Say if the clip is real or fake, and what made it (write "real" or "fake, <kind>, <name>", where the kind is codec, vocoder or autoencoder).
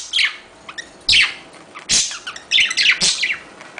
real